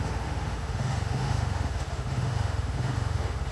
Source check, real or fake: fake